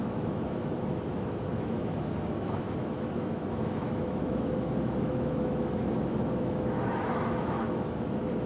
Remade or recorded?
remade